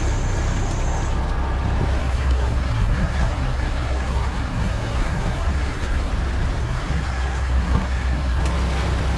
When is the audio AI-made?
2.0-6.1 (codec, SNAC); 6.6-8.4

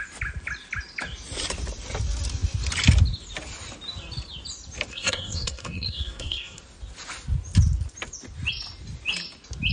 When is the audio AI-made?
4.9-6.6 (codec, SNAC)